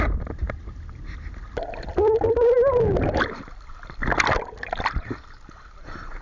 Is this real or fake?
real